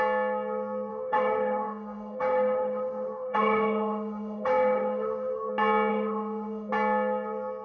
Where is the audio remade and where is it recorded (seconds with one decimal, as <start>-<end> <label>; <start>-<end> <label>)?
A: 0.0-0.9 recorded; 0.9-5.5 remade; 5.5-5.9 recorded; 5.9-6.7 remade; 6.7-7.6 recorded